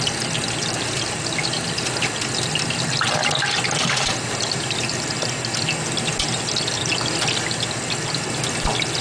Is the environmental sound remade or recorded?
recorded